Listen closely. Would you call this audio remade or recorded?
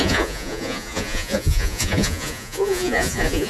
remade